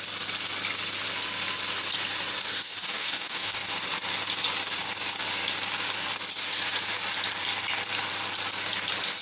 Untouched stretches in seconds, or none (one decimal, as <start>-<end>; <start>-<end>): 0.0-2.4; 3.7-9.2